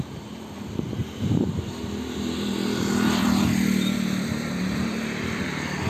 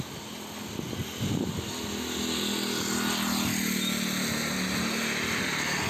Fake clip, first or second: first